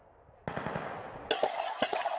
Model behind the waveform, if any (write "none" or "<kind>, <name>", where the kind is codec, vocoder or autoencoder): none